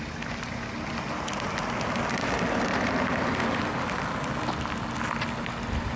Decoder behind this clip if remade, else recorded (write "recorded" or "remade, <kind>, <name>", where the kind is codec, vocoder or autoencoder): recorded